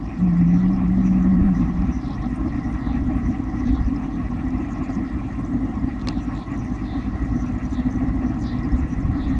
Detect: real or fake fake